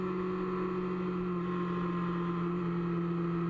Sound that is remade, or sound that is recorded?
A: recorded